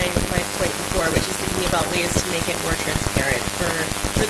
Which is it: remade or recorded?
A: recorded